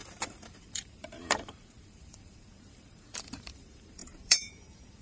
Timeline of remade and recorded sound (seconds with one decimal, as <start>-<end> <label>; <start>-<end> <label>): 0.0-5.0 remade